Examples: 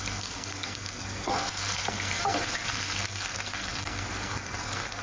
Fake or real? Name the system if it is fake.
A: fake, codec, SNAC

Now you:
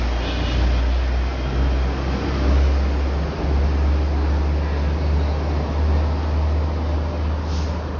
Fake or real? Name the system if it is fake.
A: real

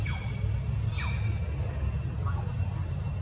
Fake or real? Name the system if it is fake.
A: real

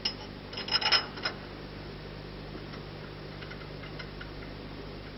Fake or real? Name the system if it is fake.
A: real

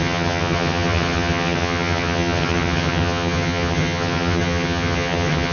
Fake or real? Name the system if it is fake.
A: fake, vocoder, HiFi-GAN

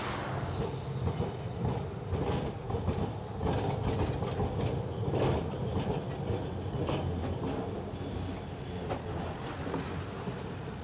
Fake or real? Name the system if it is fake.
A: real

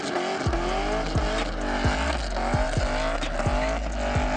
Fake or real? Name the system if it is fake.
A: real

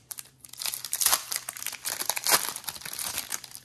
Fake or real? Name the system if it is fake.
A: fake, vocoder, BigVGAN v2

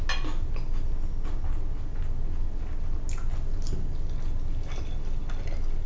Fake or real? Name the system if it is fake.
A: real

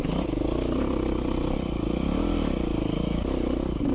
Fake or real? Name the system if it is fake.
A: real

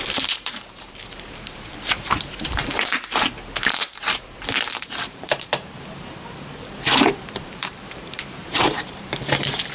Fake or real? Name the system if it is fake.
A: fake, vocoder, BigVGAN v2